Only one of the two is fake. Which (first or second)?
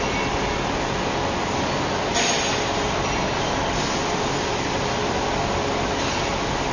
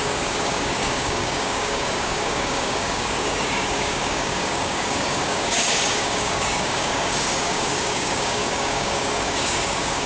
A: second